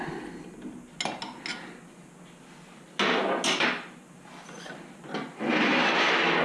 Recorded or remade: recorded